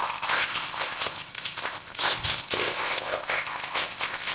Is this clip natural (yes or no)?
no